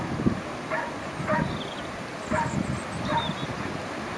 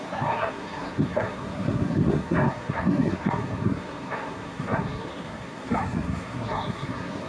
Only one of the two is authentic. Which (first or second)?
first